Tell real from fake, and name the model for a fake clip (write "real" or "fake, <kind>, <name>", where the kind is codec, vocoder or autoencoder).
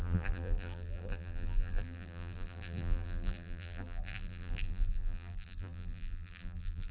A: fake, vocoder, BigVGAN v2